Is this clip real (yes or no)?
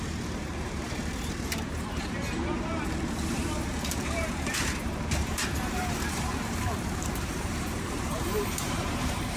no